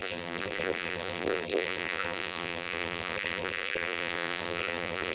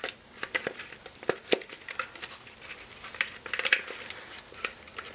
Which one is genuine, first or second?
second